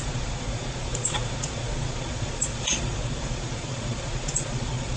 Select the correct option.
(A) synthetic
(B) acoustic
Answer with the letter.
A